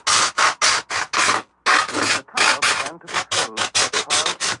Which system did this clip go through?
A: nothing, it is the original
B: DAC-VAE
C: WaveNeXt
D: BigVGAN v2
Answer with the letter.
A